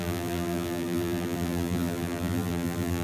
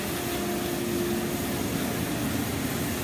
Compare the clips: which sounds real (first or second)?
second